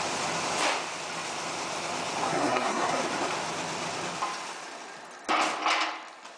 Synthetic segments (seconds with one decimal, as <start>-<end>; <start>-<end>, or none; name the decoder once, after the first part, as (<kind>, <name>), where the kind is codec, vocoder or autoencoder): 2.3-3.0 (codec, SNAC)